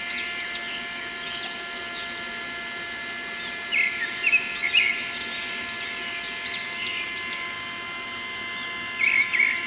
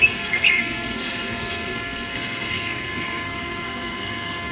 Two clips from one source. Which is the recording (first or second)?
first